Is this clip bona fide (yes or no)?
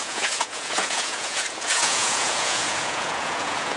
no